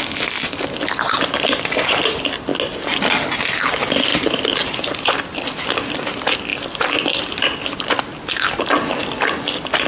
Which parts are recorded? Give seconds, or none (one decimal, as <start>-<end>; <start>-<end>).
0.0-4.1; 5.1-6.5; 8.0-9.9